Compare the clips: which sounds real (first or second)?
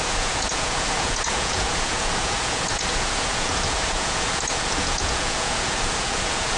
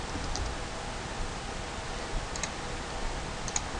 second